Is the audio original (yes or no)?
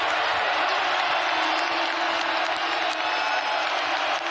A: yes